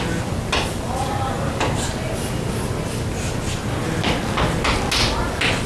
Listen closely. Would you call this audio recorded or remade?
recorded